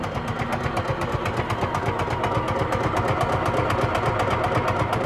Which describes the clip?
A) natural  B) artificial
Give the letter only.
A